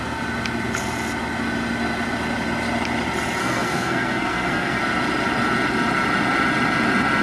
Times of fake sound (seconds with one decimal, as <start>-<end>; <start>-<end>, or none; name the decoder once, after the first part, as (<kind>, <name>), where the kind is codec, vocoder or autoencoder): 3.4-4.8 (codec, SNAC)